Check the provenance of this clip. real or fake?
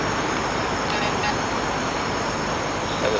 real